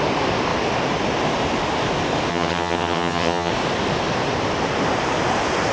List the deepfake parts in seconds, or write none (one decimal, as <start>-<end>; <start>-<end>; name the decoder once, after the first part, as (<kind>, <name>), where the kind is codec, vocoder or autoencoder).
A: 2.3-3.5 (vocoder, HiFi-GAN)